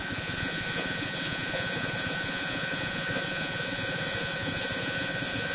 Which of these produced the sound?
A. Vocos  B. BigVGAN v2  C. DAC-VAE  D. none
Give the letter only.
A